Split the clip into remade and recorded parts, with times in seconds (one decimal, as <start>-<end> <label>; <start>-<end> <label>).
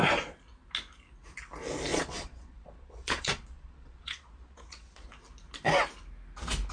0.0-1.9 recorded; 1.9-5.1 remade; 5.1-6.7 recorded